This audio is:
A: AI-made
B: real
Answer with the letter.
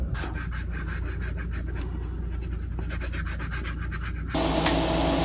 B